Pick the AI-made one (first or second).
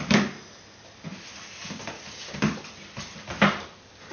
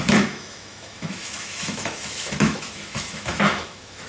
second